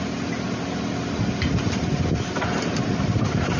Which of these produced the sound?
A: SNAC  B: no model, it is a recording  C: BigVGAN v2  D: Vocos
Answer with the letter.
B